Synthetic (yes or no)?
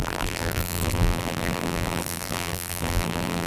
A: yes